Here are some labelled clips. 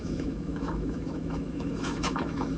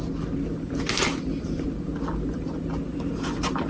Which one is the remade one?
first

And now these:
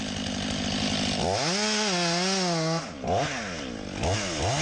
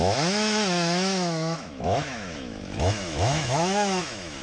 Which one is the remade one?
second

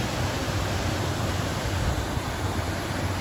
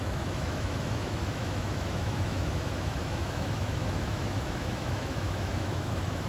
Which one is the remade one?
second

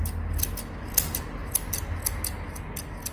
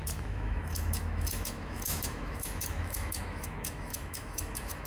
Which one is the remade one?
second